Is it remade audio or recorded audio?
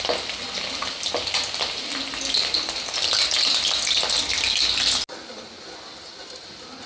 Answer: recorded